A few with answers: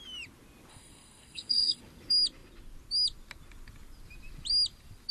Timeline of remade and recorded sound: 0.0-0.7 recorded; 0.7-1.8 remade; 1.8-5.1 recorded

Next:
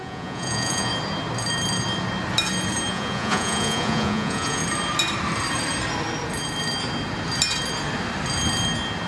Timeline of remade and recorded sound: 0.0-0.9 remade; 0.9-2.9 recorded; 2.9-4.6 remade; 4.6-9.1 recorded